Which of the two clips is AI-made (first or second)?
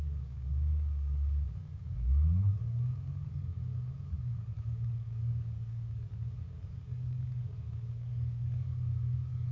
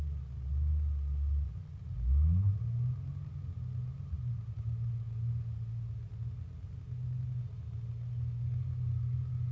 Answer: first